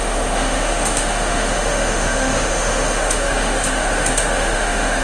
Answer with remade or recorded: remade